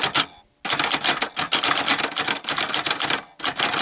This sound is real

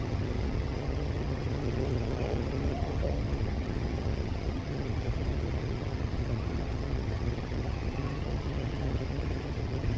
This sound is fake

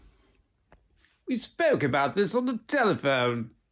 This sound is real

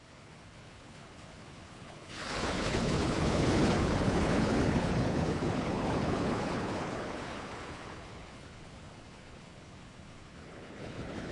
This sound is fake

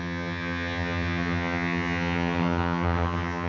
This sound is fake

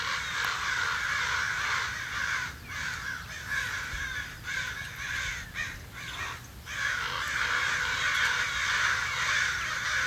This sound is real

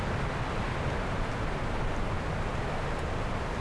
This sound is real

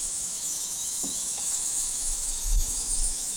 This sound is fake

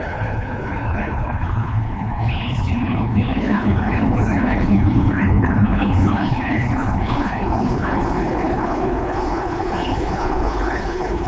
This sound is fake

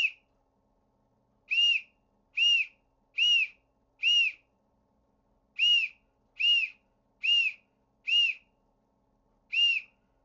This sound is real